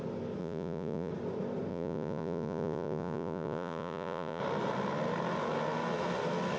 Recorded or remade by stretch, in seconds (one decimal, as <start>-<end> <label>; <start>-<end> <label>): 0.0-0.4 recorded; 0.4-1.1 remade; 1.1-1.7 recorded; 1.7-4.4 remade; 4.4-6.6 recorded